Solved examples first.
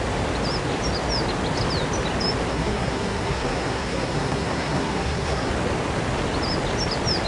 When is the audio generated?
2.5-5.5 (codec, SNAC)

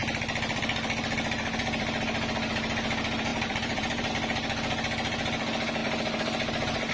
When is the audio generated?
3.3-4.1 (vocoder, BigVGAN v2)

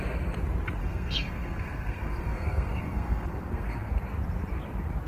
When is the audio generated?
0.8-3.9 (codec, SNAC)

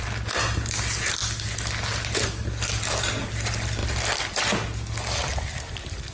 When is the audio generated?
none

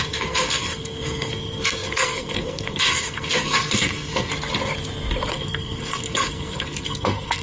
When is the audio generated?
0.0-4.3 (codec, SNAC); 5.3-7.4